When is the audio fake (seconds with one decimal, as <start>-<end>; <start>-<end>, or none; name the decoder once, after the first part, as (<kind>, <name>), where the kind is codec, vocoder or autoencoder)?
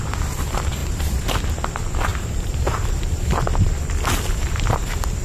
0.8-1.4 (vocoder, BigVGAN v2); 2.1-2.8